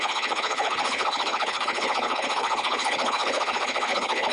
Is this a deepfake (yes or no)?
yes